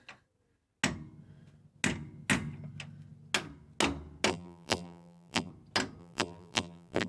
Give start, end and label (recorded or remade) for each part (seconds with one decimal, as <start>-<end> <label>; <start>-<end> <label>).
0.0-4.3 recorded; 4.3-5.5 remade; 5.5-6.0 recorded; 6.0-7.1 remade